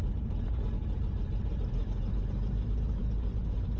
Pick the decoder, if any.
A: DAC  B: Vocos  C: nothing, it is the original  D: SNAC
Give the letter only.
C